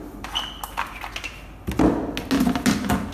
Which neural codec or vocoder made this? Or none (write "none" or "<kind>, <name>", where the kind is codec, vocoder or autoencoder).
none